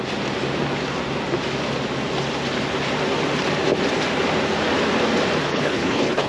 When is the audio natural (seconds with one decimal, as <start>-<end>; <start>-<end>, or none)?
0.0-5.5

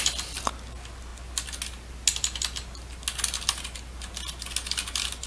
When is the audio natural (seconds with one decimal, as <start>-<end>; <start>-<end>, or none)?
0.0-5.3